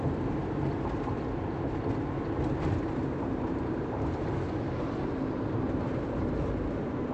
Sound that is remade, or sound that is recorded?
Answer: remade